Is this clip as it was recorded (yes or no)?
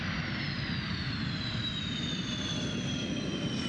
yes